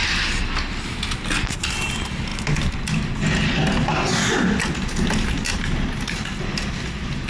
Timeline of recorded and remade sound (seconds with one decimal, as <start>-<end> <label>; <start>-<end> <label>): 0.0-7.3 recorded